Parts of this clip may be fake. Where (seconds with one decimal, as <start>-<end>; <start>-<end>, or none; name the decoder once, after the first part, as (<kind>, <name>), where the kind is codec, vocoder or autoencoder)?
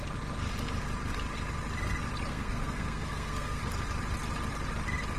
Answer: 2.3-3.6 (codec, SNAC)